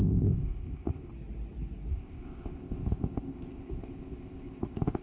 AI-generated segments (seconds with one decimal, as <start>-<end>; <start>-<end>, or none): 0.0-1.1; 1.9-5.0